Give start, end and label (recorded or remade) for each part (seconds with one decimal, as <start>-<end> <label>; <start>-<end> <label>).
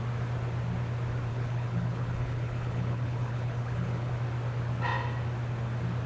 0.0-1.3 recorded; 1.3-4.1 remade; 4.1-6.1 recorded